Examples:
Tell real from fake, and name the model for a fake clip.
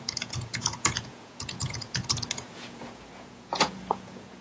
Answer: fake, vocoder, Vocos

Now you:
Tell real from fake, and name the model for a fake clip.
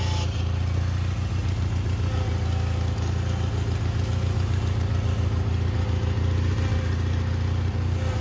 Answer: real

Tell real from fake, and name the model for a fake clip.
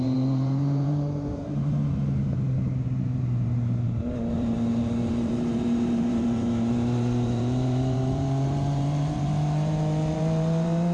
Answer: fake, vocoder, BigVGAN v2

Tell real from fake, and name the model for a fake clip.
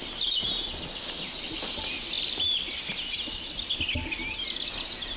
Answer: real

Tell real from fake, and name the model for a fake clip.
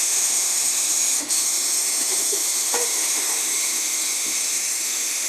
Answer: fake, autoencoder, DAC-VAE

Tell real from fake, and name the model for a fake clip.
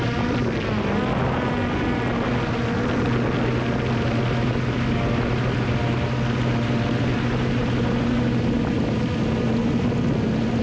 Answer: real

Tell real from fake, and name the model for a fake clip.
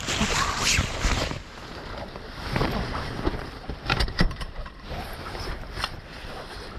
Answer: fake, vocoder, BigVGAN v2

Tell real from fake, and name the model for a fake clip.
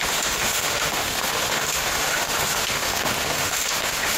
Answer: fake, autoencoder, DAC-VAE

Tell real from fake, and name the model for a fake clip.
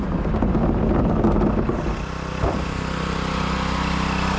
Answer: real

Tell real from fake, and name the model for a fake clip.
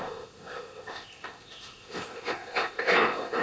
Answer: fake, codec, ZipCodec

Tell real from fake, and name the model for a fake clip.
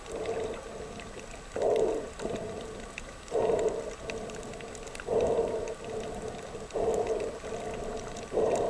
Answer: real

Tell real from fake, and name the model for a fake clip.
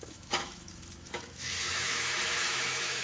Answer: fake, autoencoder, DAC-VAE